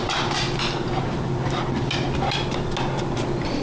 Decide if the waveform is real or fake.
real